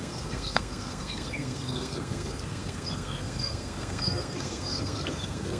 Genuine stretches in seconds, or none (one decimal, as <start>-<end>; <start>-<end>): none